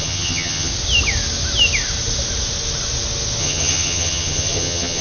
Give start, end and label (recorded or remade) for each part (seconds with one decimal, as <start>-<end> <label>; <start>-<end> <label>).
0.0-0.7 remade; 0.7-3.4 recorded; 3.4-5.0 remade